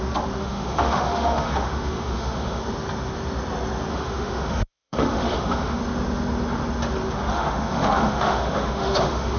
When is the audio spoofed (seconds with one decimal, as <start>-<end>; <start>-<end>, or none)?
0.4-2.6; 3.9-5.8; 7.3-9.4